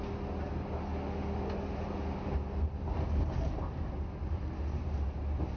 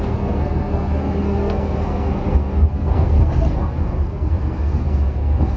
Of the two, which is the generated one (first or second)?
second